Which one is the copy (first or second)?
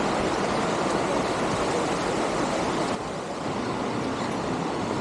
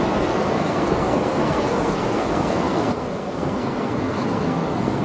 second